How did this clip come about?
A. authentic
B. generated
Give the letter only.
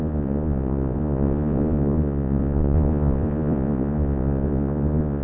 B